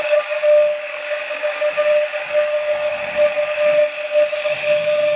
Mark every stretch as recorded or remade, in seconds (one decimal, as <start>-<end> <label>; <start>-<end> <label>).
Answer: 0.0-2.9 remade; 2.9-4.3 recorded; 4.3-5.2 remade